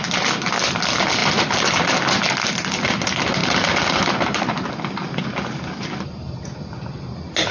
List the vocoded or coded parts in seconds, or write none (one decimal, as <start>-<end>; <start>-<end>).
1.2-1.7; 3.4-4.7